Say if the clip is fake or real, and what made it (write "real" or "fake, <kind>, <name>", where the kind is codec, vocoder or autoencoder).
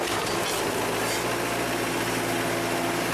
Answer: real